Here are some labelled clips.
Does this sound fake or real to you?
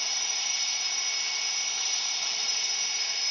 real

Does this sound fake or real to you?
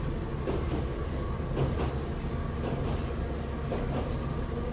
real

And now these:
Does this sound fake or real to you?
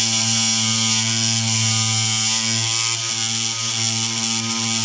real